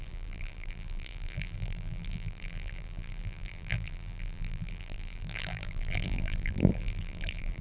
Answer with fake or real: fake